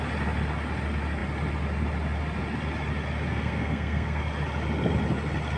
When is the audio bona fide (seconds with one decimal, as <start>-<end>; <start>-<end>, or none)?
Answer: 0.0-3.3; 4.2-5.6